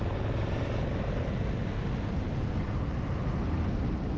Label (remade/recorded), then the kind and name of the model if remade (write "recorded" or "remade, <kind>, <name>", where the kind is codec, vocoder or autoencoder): recorded